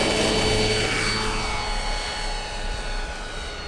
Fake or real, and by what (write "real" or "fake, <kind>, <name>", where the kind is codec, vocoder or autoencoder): real